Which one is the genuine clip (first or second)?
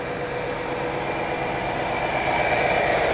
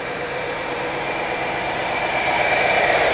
first